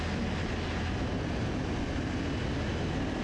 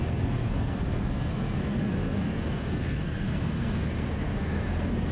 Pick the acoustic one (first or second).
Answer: first